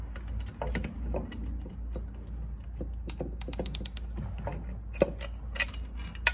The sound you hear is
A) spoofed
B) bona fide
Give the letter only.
B